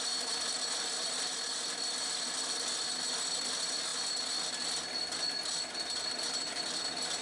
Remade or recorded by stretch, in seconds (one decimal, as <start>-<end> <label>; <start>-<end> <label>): 0.0-7.2 recorded